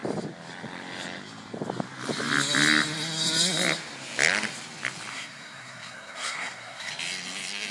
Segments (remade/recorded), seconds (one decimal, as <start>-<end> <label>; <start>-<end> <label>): 0.0-5.1 recorded; 5.1-6.9 remade; 6.9-7.7 recorded